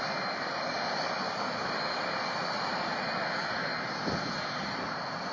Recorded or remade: recorded